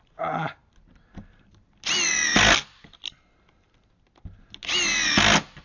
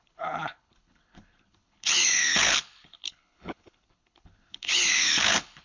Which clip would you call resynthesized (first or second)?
second